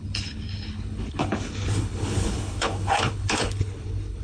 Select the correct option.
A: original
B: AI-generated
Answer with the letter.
B